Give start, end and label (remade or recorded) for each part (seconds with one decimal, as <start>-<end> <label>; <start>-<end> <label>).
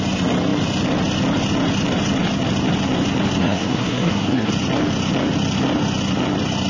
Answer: 0.0-3.4 recorded; 3.4-4.5 remade; 4.5-6.7 recorded